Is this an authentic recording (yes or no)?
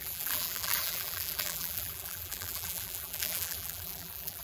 no